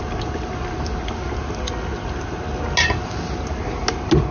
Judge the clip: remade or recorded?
recorded